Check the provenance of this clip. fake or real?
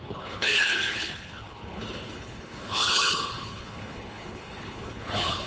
fake